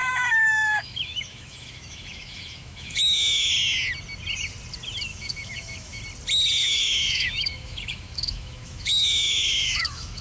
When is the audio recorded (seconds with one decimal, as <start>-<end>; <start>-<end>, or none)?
3.5-5.1; 6.0-6.6